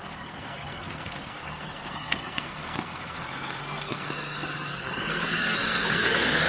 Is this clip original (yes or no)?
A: no